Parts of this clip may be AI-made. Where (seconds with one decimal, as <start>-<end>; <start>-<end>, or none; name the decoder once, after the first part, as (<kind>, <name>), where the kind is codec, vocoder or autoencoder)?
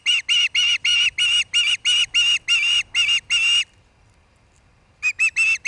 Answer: none